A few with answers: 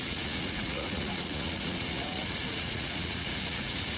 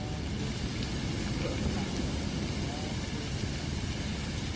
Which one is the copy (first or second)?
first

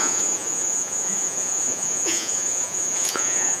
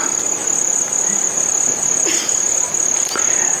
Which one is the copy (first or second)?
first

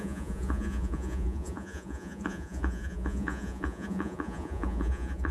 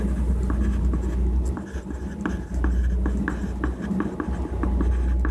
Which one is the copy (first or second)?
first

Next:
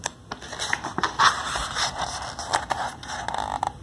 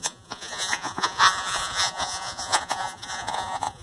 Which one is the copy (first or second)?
second